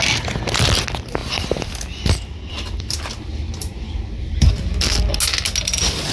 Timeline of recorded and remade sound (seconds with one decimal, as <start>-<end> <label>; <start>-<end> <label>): 0.0-1.2 recorded; 1.2-4.5 remade; 4.5-6.1 recorded